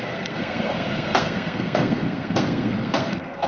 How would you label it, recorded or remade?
remade